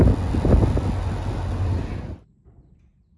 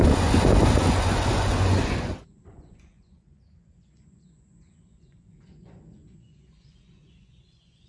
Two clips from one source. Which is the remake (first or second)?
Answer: second